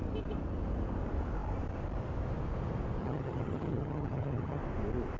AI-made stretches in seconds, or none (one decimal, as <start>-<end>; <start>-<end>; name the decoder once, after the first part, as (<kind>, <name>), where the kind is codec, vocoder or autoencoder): 3.0-4.6 (vocoder, HiFi-GAN)